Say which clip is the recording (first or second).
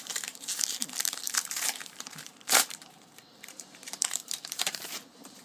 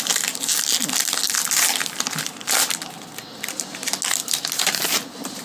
second